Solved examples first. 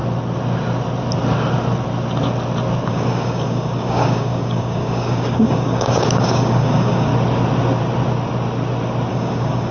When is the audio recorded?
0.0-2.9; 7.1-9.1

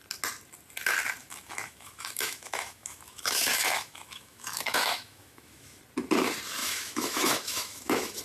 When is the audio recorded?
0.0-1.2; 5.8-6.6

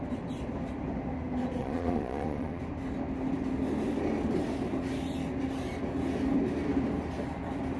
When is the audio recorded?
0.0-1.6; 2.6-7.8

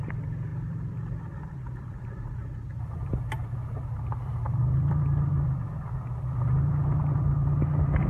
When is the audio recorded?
none

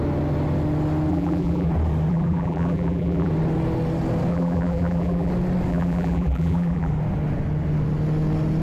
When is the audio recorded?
0.0-1.1; 1.7-2.1; 3.3-4.3; 5.3-5.7; 6.9-8.6

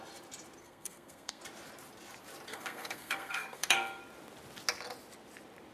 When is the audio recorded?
0.0-0.6; 1.4-2.5; 4.0-5.7

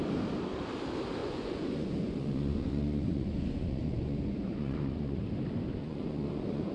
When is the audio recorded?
0.0-1.2; 5.2-5.8